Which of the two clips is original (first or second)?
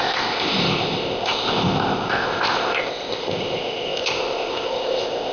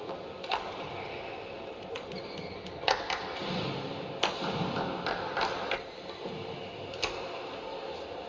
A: second